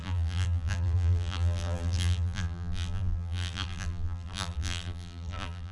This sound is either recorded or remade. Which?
remade